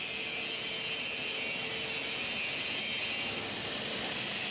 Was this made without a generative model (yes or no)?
yes